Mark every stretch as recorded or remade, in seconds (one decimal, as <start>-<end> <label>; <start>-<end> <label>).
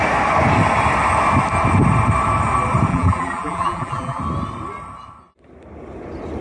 0.0-2.9 recorded; 2.9-4.2 remade; 4.2-6.4 recorded